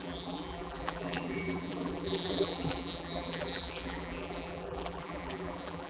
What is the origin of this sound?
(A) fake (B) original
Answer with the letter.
A